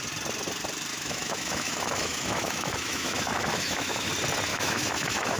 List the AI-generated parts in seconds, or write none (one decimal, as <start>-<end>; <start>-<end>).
0.9-4.1; 4.5-5.4